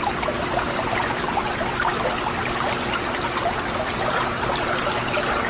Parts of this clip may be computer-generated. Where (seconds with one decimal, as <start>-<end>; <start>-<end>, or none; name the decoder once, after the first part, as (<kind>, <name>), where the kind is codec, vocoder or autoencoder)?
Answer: none